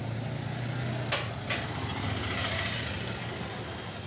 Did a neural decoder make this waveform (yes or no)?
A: no